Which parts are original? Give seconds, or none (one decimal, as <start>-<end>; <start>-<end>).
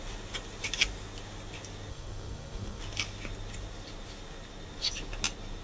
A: 0.0-1.9; 2.8-5.6